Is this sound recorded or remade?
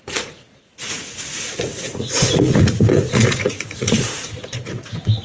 remade